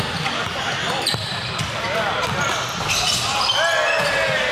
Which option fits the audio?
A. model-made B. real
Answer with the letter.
B